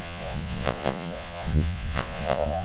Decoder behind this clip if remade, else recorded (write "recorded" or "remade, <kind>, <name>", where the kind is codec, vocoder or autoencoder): remade, vocoder, Vocos